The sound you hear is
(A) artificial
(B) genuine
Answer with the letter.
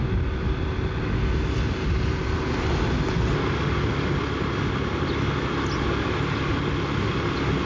B